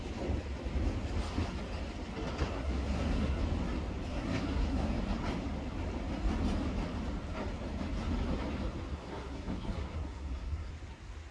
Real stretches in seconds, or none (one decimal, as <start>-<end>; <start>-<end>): 0.0-2.4; 3.4-4.1; 5.0-8.9; 10.7-11.3